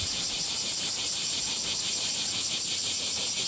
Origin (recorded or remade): remade